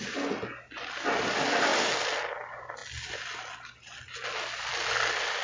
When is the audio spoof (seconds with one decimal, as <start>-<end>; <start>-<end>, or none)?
none